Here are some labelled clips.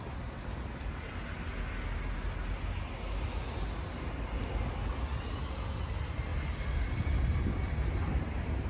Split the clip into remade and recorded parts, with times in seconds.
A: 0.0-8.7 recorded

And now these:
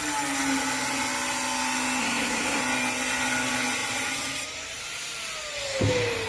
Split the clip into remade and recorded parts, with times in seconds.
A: 0.0-2.0 recorded; 2.0-2.6 remade; 2.6-6.3 recorded

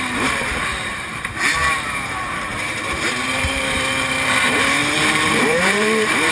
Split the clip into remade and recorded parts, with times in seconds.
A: 0.0-6.3 remade

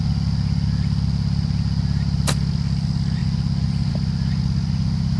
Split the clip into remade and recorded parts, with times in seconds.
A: 0.0-5.2 recorded

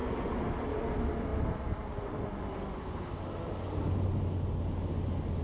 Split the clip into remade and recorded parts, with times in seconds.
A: 0.0-0.5 remade; 0.5-5.4 recorded